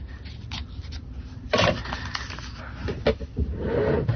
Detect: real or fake real